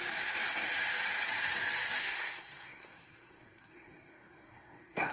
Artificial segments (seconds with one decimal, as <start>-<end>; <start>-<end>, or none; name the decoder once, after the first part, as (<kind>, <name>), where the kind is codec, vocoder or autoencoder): 2.0-5.1 (codec, SNAC)